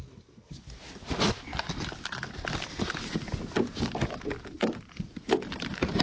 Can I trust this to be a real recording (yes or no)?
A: yes